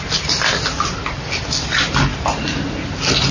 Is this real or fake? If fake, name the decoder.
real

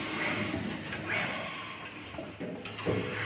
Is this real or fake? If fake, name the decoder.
real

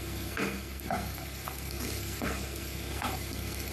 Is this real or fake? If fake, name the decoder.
fake, codec, SNAC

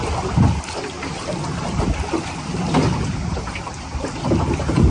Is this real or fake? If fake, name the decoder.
real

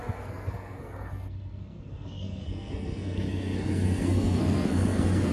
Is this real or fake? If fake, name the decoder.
fake, codec, SNAC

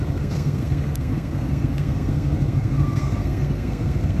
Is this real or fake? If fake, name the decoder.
fake, codec, SNAC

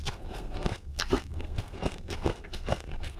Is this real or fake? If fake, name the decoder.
fake, codec, SNAC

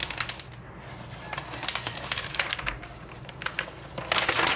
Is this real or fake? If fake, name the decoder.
real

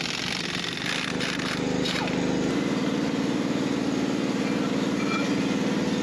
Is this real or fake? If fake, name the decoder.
real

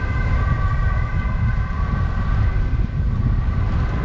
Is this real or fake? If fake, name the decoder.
real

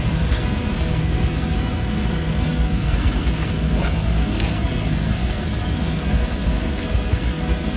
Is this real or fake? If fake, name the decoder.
fake, codec, SNAC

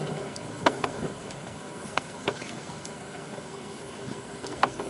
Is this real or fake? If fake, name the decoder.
fake, codec, SNAC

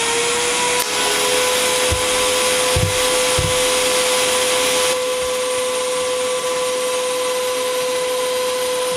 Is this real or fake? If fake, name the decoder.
real